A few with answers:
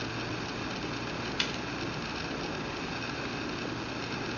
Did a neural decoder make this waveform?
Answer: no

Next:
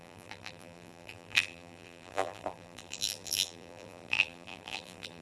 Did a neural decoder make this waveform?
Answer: yes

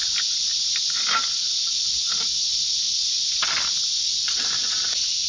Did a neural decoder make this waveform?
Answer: no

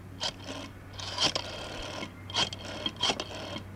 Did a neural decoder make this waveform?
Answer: no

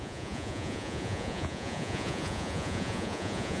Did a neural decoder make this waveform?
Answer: yes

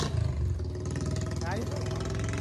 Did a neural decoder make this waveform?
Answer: no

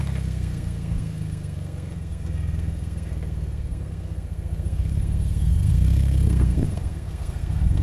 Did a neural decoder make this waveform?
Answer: yes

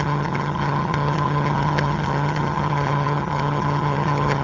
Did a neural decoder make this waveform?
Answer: yes